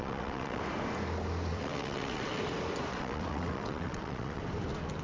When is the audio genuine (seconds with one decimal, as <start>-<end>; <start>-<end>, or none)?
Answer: 0.6-1.5; 2.4-2.9; 4.4-5.0